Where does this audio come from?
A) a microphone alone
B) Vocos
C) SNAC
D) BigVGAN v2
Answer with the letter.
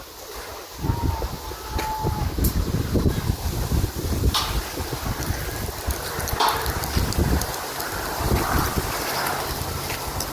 A